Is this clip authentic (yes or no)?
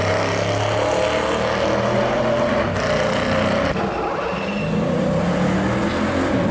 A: yes